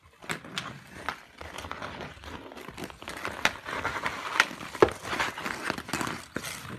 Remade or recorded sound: recorded